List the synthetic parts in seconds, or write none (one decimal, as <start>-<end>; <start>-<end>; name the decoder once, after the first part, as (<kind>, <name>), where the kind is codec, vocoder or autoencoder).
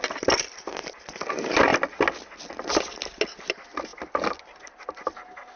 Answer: none